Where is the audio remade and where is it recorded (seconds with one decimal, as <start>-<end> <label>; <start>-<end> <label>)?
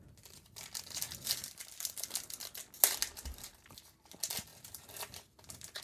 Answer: 0.0-1.4 recorded; 1.4-2.6 remade; 2.6-4.5 recorded; 4.5-5.8 remade